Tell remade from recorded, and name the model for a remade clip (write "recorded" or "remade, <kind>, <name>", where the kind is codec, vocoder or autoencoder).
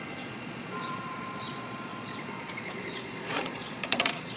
remade, vocoder, Vocos